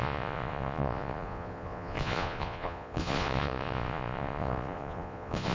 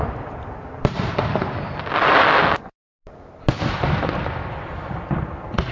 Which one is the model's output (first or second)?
first